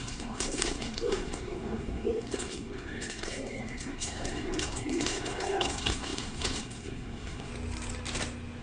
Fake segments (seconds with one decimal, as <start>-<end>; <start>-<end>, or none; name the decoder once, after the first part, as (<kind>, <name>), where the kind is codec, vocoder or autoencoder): 0.0-7.5 (codec, SNAC)